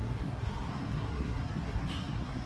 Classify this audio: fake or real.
fake